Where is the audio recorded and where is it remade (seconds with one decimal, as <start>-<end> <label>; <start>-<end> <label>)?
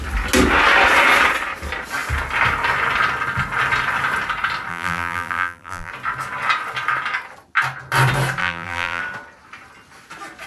0.0-4.7 recorded; 4.7-5.9 remade; 5.9-8.4 recorded; 8.4-9.0 remade; 9.0-10.5 recorded